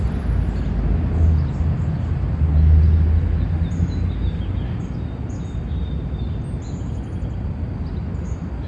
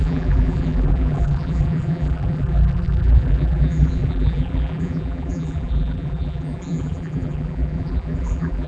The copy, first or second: second